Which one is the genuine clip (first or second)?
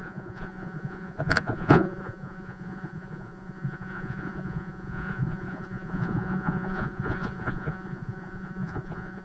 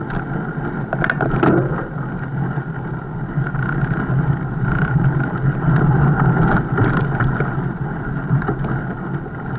second